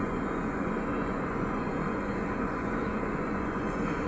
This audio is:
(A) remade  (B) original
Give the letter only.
A